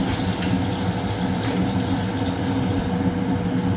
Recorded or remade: recorded